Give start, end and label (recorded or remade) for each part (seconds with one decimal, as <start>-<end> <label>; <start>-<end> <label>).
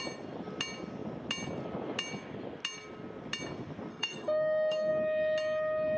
0.0-3.9 recorded; 3.9-4.9 remade; 4.9-6.0 recorded